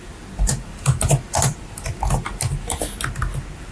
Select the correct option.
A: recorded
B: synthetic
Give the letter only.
A